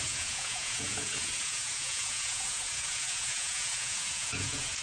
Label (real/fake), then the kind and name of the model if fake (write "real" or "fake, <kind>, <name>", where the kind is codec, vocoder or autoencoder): fake, vocoder, Vocos